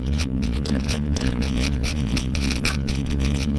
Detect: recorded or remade remade